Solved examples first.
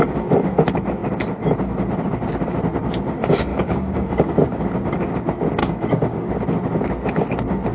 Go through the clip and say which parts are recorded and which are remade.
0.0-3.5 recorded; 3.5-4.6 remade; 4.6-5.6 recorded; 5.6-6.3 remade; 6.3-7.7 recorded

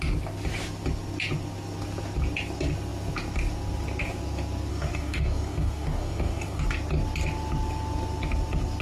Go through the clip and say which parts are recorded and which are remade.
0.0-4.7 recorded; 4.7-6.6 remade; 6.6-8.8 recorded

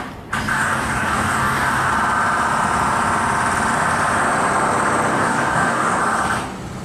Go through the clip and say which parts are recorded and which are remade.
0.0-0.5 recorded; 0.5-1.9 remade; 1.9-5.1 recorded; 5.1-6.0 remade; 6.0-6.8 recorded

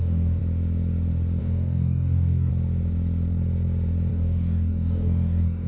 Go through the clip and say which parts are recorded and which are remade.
0.0-0.4 remade; 0.4-1.4 recorded; 1.4-2.5 remade; 2.5-4.1 recorded; 4.1-5.7 remade

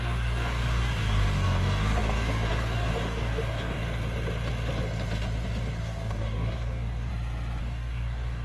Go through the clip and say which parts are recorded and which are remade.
0.0-3.8 remade; 3.8-5.8 recorded; 5.8-7.1 remade; 7.1-7.6 recorded; 7.6-8.4 remade

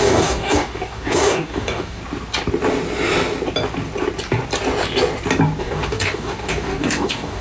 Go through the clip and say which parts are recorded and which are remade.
0.0-2.0 remade; 2.0-5.6 recorded; 5.6-7.4 remade